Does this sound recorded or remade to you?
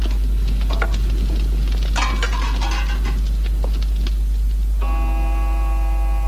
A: recorded